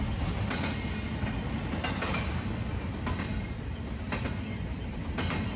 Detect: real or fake real